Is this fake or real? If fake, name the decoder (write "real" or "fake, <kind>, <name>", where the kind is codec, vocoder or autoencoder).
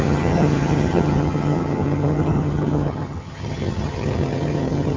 fake, vocoder, HiFi-GAN